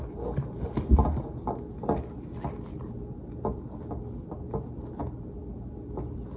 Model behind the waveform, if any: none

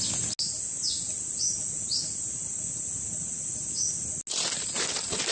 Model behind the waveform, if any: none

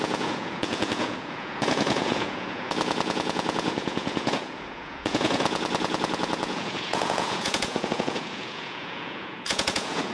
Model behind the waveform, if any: vocoder, Vocos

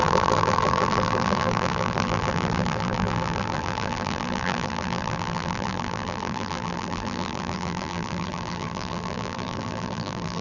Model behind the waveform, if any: vocoder, BigVGAN v2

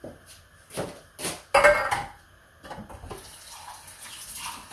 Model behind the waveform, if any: none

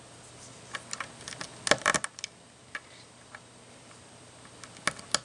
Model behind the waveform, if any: none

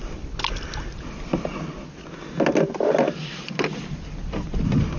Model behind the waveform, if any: none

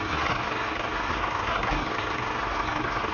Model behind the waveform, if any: codec, SNAC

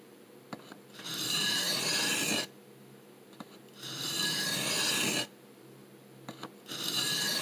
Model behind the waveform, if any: none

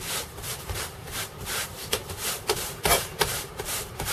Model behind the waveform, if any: vocoder, BigVGAN v2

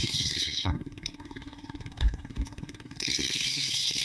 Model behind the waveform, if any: codec, SNAC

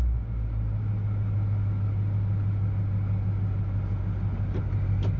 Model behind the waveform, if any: none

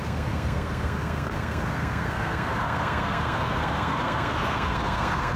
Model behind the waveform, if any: codec, SNAC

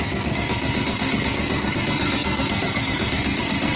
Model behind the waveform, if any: codec, SNAC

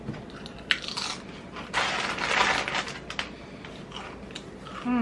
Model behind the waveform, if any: none